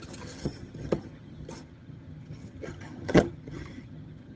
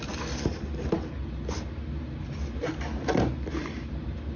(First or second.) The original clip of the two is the second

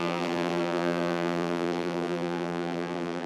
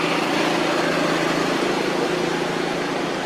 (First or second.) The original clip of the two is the second